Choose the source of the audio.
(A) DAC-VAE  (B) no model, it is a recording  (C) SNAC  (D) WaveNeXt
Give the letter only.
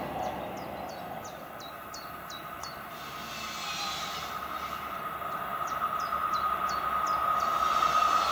B